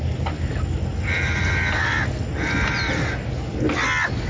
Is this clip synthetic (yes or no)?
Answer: no